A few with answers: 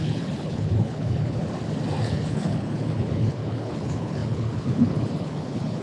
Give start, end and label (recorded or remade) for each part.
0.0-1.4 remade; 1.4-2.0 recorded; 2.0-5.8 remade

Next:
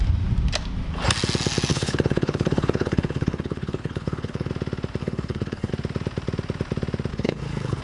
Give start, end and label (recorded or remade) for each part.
0.0-1.7 recorded; 1.7-4.5 remade; 4.5-5.0 recorded; 5.0-5.7 remade; 5.7-7.1 recorded; 7.1-7.8 remade

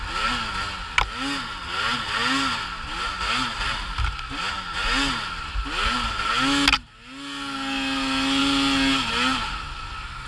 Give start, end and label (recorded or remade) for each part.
0.0-10.3 recorded

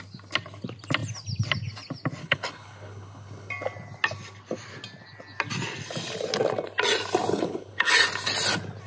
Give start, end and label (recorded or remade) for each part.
0.0-2.2 recorded; 2.2-3.5 remade; 3.5-7.3 recorded; 7.3-7.9 remade; 7.9-8.9 recorded

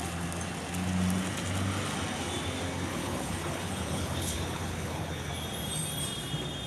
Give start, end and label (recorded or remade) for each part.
0.0-2.9 recorded; 2.9-5.3 remade; 5.3-6.7 recorded